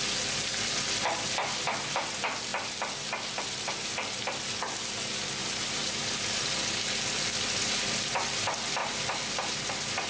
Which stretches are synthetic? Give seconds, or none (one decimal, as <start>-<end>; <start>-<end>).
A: 5.4-6.4; 8.8-9.7